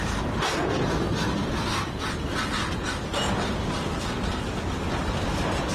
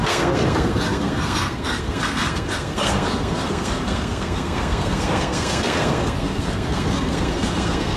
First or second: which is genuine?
first